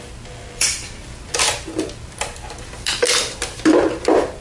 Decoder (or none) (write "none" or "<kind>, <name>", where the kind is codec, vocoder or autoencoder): none